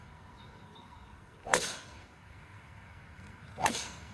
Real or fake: fake